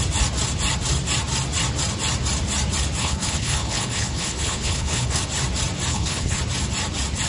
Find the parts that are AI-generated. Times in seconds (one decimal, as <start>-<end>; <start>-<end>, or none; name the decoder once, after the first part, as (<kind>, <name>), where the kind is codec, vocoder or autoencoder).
3.0-5.2 (codec, HILCodec); 5.9-6.4